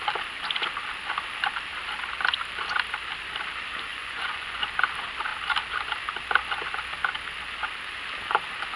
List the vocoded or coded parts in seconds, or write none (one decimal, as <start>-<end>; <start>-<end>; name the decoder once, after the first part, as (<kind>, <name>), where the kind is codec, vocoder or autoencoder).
3.9-4.6 (vocoder, Vocos)